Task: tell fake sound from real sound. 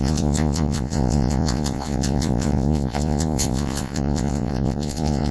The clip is fake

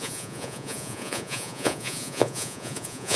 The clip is fake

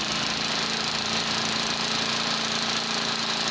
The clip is real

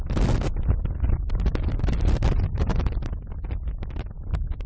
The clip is real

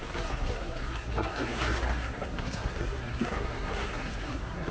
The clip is fake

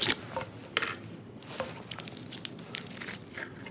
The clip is real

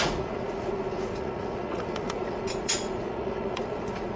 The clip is fake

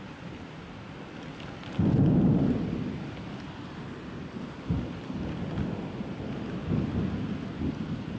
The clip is real